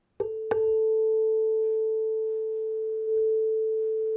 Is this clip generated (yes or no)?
no